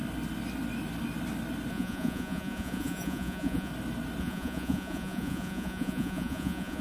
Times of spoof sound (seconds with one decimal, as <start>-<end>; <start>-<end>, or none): 1.7-3.7; 4.2-6.8